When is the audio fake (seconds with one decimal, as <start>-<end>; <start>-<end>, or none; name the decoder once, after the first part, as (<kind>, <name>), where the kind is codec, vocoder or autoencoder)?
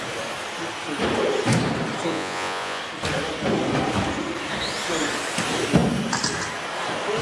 2.1-2.8 (vocoder, Vocos)